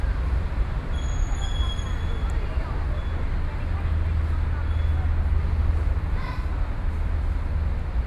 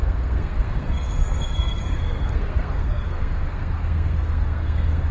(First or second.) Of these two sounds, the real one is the first